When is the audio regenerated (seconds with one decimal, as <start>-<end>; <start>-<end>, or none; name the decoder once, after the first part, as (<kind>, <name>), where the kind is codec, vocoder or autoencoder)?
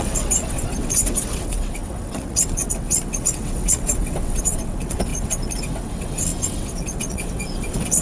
0.0-8.0 (vocoder, WaveNeXt)